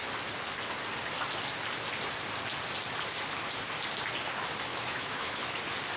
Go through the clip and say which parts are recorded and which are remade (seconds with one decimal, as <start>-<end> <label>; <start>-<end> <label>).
0.0-4.7 recorded; 4.7-5.6 remade; 5.6-6.0 recorded

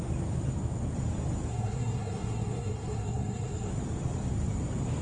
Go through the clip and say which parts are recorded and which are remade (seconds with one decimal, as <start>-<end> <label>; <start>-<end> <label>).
0.0-1.5 recorded; 1.5-3.7 remade; 3.7-5.0 recorded

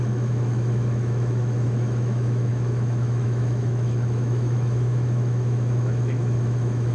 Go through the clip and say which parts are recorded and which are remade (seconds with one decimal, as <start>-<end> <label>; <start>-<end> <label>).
0.0-6.9 remade

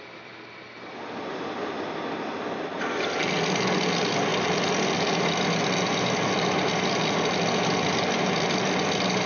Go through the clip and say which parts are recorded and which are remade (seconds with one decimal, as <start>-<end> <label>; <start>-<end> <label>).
0.0-9.3 recorded

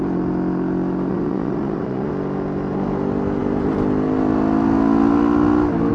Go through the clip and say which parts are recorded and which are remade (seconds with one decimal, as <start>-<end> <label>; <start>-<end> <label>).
0.0-1.1 recorded; 1.1-2.1 remade; 2.1-5.9 recorded

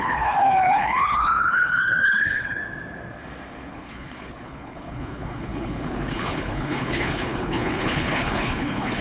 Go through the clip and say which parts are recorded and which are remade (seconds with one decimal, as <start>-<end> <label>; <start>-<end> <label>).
0.0-2.6 remade; 2.6-3.7 recorded; 3.7-9.0 remade

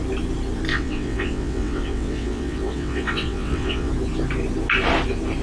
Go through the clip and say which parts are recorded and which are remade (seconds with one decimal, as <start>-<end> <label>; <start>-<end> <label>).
0.0-0.7 recorded; 0.7-3.9 remade; 3.9-5.4 recorded